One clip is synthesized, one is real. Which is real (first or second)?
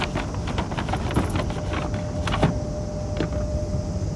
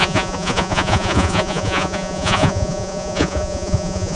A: first